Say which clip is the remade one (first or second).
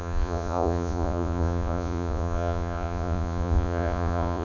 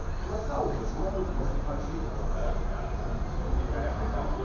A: first